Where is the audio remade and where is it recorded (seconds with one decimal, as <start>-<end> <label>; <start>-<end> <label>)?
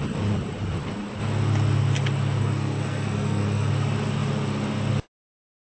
0.0-2.4 recorded; 2.4-3.7 remade; 3.7-5.6 recorded